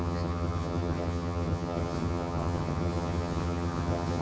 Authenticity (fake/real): fake